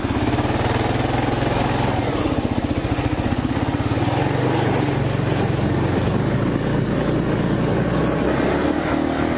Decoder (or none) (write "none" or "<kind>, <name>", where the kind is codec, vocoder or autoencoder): none